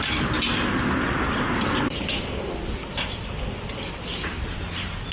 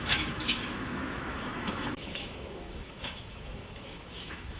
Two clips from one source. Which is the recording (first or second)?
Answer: first